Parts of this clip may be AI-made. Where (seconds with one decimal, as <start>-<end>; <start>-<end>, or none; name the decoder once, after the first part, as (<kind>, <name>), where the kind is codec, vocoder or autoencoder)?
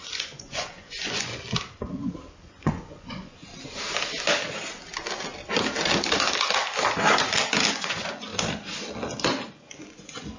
0.0-1.3 (vocoder, Vocos); 2.4-3.5; 7.7-8.3; 9.5-10.4